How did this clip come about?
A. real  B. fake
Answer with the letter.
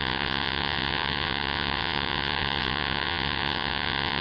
B